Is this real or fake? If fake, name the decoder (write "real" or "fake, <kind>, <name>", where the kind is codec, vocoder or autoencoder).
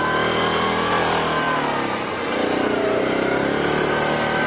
real